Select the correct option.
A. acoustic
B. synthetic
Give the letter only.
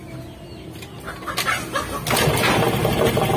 A